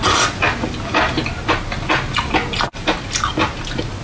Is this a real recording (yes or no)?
yes